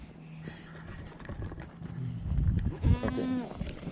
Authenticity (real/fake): real